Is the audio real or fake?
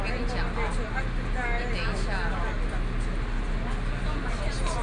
real